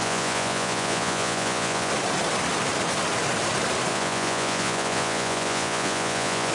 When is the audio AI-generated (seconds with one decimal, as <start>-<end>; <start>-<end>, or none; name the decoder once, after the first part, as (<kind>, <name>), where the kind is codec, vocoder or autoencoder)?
0.0-1.9 (vocoder, Vocos); 3.9-6.5

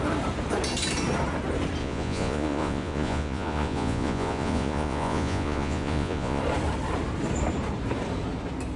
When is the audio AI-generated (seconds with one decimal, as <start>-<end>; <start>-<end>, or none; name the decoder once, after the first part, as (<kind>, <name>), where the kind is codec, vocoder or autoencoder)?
1.8-6.4 (vocoder, Vocos)

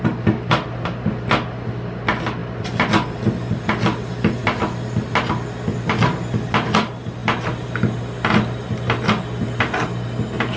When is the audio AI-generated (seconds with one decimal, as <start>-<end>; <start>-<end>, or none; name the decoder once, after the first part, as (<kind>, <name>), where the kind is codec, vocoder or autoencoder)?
none

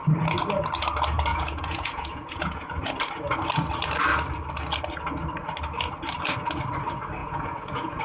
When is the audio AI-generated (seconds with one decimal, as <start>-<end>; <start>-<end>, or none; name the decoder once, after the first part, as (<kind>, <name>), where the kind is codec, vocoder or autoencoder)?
1.3-2.8 (vocoder, Vocos); 7.2-8.0

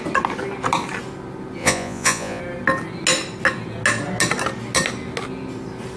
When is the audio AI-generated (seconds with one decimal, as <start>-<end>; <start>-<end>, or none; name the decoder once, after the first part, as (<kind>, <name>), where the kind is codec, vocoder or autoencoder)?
1.6-2.4 (vocoder, Vocos)

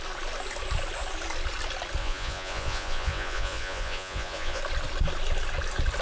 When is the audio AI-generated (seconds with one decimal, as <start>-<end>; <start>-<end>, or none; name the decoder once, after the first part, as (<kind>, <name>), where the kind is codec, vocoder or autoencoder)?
2.0-4.6 (vocoder, Vocos)

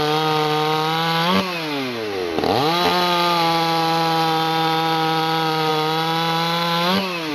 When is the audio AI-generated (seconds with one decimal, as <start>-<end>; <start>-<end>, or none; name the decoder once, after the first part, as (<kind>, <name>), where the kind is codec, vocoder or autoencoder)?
none